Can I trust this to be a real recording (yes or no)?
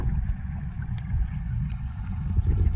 no